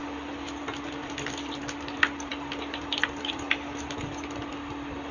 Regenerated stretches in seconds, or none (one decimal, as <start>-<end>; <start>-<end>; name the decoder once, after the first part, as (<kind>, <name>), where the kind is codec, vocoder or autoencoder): none